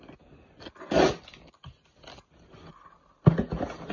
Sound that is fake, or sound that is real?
real